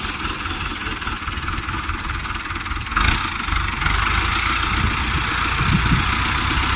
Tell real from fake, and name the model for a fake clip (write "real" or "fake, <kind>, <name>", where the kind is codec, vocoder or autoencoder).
real